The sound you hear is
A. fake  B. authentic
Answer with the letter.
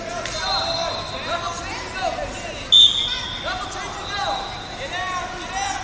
B